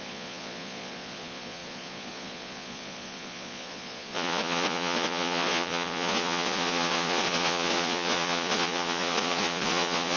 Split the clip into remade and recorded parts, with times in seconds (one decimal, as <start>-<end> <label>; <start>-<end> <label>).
0.0-10.2 remade